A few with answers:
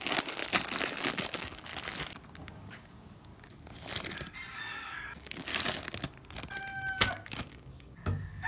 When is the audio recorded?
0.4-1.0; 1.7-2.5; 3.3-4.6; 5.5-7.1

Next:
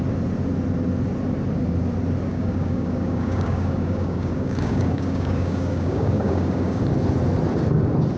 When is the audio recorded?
0.0-2.3; 6.8-8.2

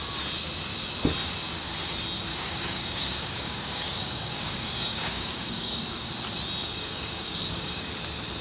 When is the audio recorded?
0.0-2.3; 6.1-6.6; 7.9-8.4

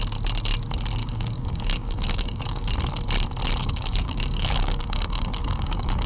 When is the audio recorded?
0.0-1.0; 2.7-3.6

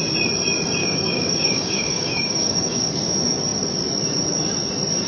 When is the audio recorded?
0.0-0.8; 2.9-5.1

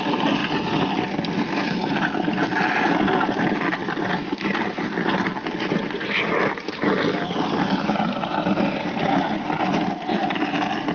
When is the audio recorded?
0.0-10.9

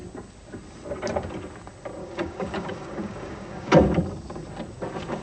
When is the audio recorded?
0.0-2.0; 3.7-5.2

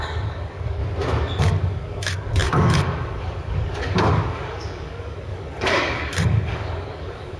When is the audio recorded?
0.8-1.4